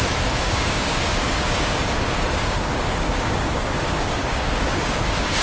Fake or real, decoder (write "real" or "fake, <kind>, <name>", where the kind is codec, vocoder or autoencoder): fake, codec, DAC